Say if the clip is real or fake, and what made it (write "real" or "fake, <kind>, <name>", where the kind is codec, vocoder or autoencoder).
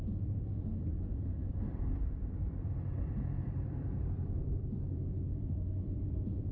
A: fake, vocoder, BigVGAN v2